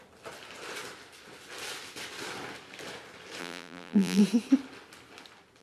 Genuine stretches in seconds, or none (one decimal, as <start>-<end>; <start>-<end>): 0.0-3.4; 4.2-5.6